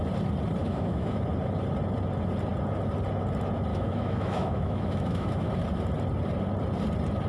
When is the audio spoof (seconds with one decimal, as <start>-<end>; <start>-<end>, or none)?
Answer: 0.6-1.2; 3.7-5.5